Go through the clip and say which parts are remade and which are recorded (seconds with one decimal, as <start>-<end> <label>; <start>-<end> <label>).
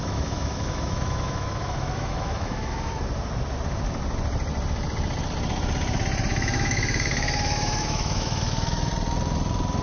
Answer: 0.0-3.0 remade; 3.0-6.3 recorded; 6.3-8.9 remade; 8.9-9.8 recorded